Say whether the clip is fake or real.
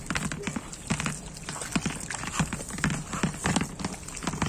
real